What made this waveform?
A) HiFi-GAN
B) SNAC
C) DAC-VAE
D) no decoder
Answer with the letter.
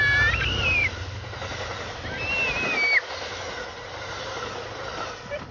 D